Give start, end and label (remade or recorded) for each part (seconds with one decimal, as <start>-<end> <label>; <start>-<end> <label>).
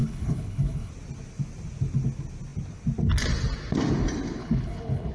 0.0-0.9 remade; 0.9-4.4 recorded; 4.4-5.1 remade